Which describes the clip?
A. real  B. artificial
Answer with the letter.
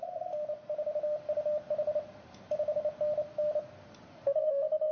A